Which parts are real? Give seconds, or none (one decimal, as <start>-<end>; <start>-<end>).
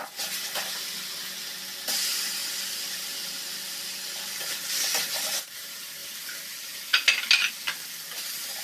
0.0-2.4; 5.1-6.0; 7.5-8.6